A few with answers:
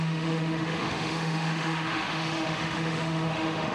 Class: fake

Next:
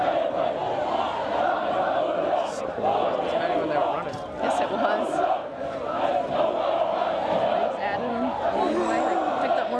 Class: real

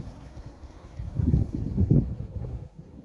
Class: fake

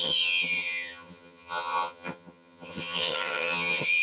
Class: fake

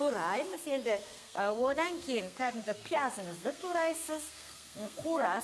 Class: fake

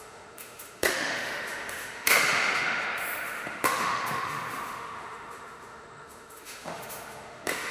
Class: fake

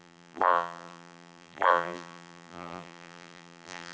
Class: fake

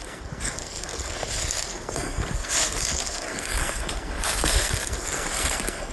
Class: fake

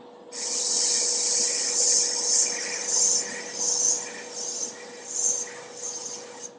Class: real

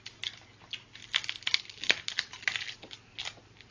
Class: real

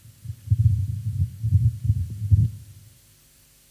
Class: real